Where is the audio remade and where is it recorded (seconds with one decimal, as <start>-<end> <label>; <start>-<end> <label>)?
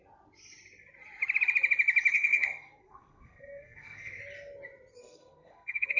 0.0-2.1 recorded; 2.1-4.2 remade; 4.2-4.9 recorded; 4.9-6.0 remade